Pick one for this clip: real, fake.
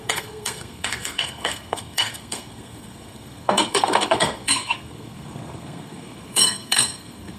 fake